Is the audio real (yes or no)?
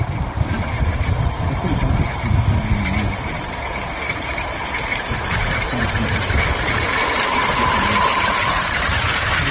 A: no